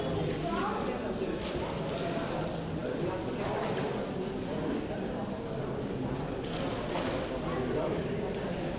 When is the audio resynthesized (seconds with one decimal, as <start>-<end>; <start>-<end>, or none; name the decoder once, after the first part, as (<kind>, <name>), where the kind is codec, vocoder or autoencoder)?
none